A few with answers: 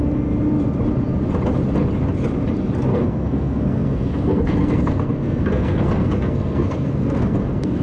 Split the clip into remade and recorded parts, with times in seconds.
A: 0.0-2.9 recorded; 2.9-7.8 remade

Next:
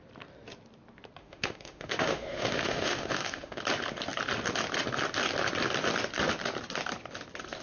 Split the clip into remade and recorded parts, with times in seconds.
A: 0.0-1.2 recorded; 1.2-3.6 remade; 3.6-7.6 recorded